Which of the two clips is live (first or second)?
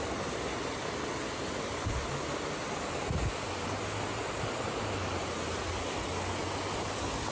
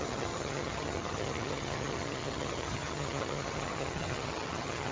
first